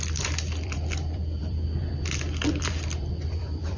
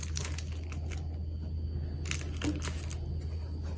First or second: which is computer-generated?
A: first